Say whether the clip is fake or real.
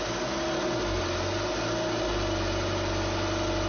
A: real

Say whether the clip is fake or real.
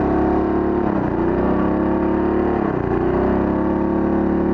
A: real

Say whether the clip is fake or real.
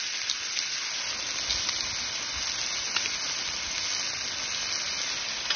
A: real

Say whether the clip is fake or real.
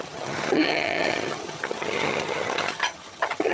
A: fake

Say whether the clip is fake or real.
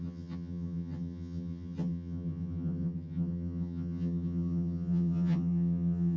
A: fake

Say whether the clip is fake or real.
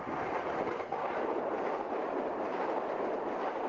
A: real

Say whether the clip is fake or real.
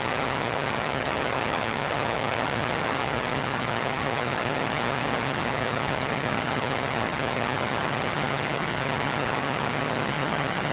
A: fake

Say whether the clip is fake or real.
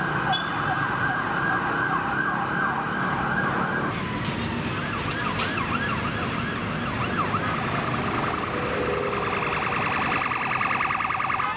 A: real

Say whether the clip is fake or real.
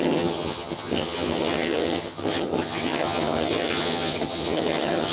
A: fake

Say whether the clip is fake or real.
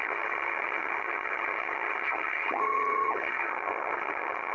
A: fake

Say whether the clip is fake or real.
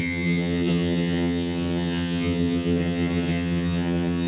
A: fake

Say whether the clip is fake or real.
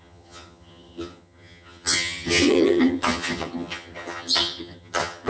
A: fake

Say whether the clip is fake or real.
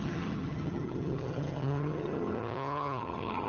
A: fake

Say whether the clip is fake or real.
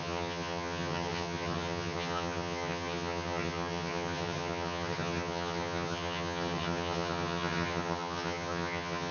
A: fake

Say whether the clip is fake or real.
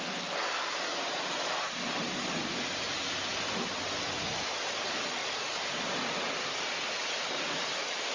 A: real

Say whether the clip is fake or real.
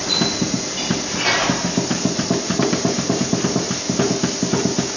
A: real